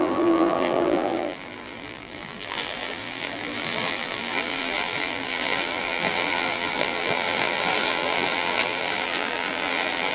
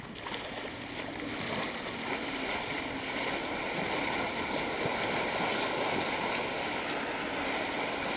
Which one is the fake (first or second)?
first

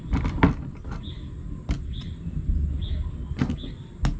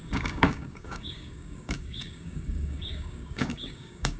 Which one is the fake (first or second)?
second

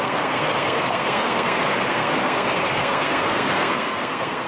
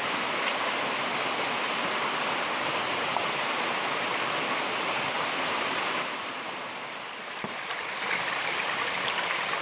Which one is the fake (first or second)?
first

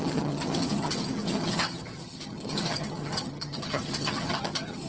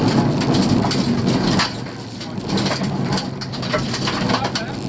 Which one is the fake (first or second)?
first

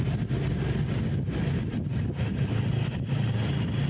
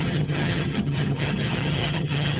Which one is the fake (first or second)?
second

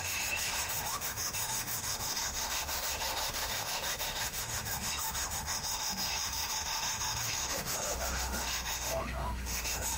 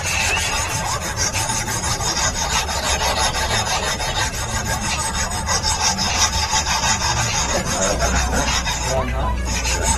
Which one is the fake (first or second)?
first